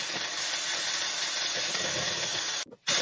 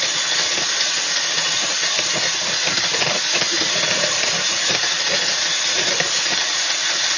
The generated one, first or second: second